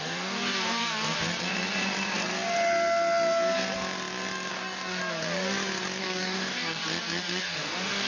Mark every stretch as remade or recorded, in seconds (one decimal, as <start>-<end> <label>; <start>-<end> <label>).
0.0-0.8 remade; 0.8-4.5 recorded; 4.5-5.0 remade; 5.0-6.0 recorded; 6.0-6.8 remade; 6.8-7.4 recorded; 7.4-8.1 remade